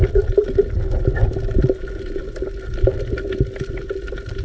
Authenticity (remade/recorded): recorded